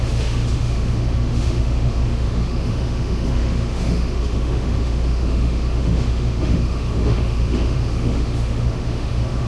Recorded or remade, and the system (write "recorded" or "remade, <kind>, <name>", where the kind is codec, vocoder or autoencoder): remade, autoencoder, DAC-VAE